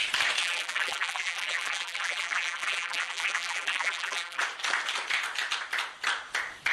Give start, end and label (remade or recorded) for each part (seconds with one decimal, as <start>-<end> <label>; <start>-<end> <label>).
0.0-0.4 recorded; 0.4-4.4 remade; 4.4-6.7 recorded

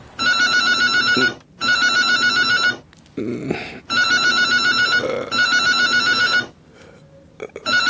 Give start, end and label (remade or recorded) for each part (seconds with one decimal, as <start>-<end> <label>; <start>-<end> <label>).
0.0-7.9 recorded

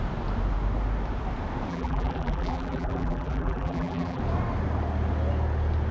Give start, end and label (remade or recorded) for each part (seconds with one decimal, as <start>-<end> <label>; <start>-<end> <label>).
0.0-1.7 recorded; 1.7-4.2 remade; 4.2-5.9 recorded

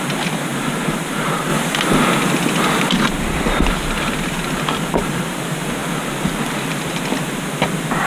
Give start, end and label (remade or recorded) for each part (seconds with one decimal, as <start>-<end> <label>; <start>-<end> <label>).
0.0-1.5 remade; 1.5-2.9 recorded; 2.9-5.8 remade; 5.8-8.1 recorded

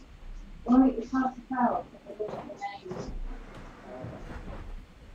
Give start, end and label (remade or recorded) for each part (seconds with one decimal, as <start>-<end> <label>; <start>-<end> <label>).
0.0-0.6 recorded; 0.6-1.4 remade; 1.4-5.1 recorded

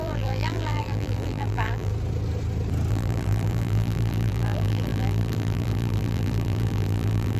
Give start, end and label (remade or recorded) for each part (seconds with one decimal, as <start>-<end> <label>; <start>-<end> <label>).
0.0-1.9 remade; 1.9-2.9 recorded; 2.9-7.4 remade